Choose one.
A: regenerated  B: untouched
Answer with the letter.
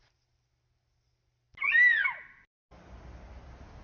B